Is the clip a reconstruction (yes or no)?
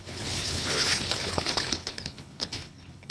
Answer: yes